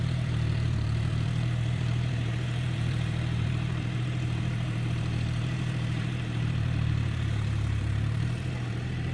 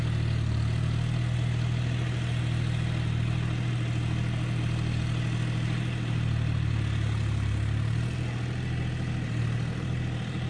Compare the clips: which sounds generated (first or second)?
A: first